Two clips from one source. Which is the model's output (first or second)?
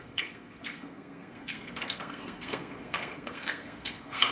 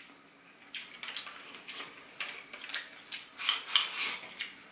first